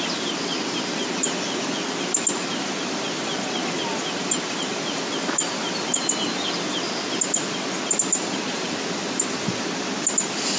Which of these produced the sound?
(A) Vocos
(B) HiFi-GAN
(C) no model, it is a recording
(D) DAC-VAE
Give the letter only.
C